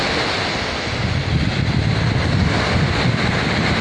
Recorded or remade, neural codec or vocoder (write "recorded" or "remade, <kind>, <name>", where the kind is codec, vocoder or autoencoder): recorded